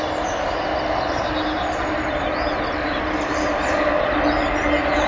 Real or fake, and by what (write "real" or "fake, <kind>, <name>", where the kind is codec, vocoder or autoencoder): real